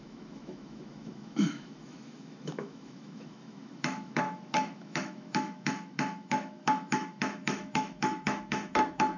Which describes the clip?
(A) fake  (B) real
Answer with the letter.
A